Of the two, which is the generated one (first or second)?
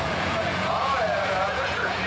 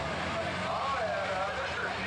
first